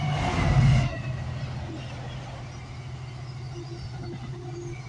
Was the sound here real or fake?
real